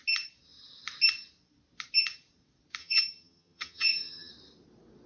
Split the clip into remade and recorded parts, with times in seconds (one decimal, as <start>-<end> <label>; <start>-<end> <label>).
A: 0.0-2.8 recorded; 2.8-4.3 remade; 4.3-5.1 recorded